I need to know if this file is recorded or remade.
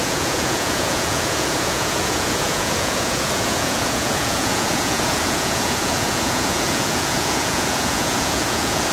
remade